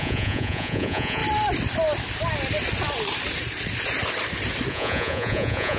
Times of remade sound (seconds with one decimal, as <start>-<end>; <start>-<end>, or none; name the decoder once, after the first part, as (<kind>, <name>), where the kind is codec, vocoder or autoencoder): 0.0-1.2 (vocoder, Vocos); 4.7-5.8